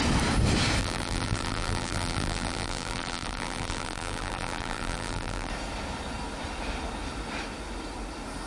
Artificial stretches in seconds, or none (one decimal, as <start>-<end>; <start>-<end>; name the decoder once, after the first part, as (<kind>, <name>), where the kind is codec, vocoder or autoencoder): 0.8-5.5 (vocoder, BigVGAN v2)